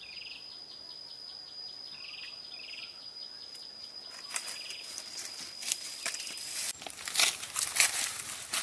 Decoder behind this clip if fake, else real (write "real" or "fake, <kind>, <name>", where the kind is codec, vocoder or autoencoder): real